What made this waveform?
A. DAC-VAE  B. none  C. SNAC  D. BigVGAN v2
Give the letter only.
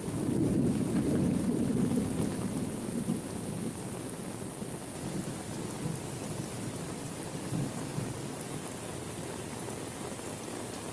B